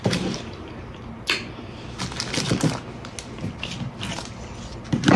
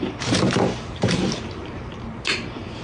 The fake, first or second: second